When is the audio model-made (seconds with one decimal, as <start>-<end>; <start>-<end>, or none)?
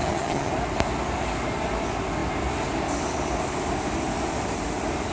0.0-0.5